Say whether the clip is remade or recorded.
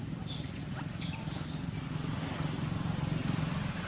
recorded